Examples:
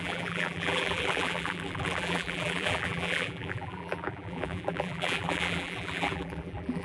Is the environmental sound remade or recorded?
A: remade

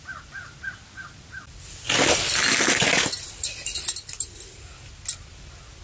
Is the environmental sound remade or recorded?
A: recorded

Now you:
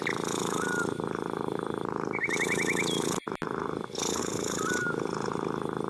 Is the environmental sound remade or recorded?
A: recorded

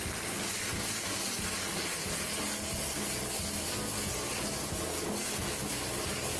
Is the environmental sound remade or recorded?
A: recorded